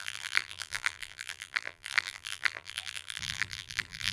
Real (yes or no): no